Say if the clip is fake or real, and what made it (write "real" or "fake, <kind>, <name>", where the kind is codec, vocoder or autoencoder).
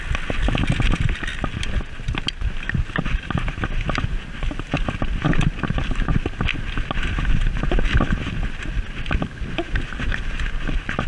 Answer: real